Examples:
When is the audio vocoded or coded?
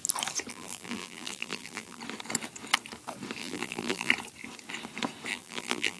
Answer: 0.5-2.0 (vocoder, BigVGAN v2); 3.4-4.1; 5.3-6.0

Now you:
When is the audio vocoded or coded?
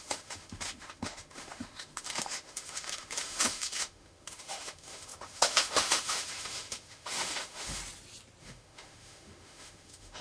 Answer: 0.0-7.8 (autoencoder, DAC-VAE); 8.4-10.2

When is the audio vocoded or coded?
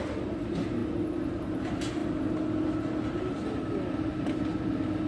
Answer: none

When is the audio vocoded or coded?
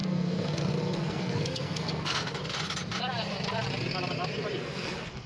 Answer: 0.0-2.4 (codec, SNAC); 4.6-5.3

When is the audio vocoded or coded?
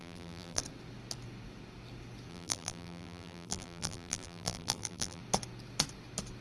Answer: 0.0-0.6 (vocoder, BigVGAN v2); 2.3-5.2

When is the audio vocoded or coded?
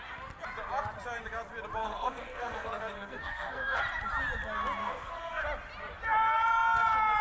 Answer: 1.8-3.8 (codec, SNAC); 4.8-5.4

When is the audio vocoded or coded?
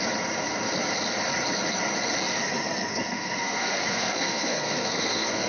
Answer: 2.9-5.5 (codec, SNAC)